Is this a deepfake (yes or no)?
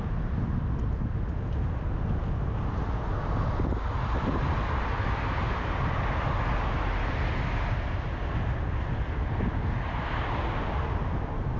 no